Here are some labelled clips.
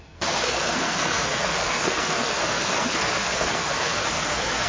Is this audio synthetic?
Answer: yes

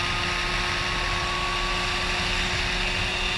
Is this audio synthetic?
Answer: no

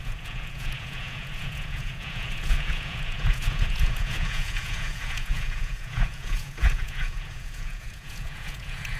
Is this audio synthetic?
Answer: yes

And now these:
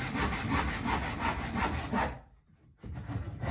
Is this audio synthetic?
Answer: no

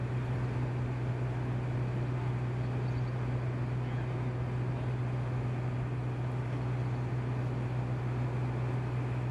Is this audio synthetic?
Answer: no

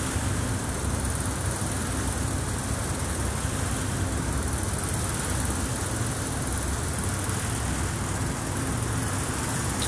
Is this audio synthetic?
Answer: no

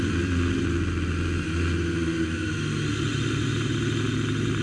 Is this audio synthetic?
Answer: no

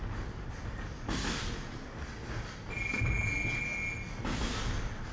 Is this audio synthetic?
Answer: no